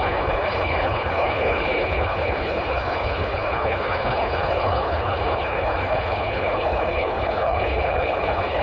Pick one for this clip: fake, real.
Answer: fake